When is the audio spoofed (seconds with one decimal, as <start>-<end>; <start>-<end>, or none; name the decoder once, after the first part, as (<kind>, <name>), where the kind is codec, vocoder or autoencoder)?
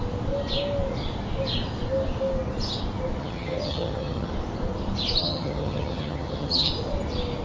3.2-4.3 (vocoder, HiFi-GAN); 5.2-6.7